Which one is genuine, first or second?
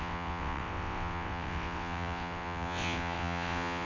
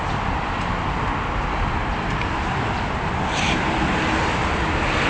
second